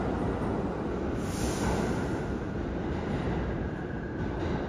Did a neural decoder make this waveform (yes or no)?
no